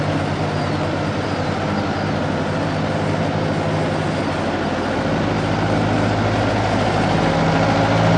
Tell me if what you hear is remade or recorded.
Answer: recorded